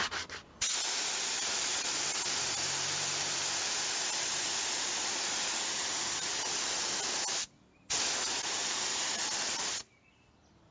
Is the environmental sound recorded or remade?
recorded